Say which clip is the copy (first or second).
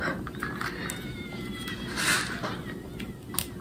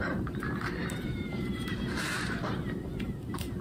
second